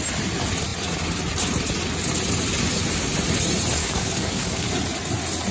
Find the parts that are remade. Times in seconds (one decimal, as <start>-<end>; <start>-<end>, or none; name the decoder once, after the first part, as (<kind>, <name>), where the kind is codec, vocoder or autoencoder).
3.8-4.7 (codec, DAC)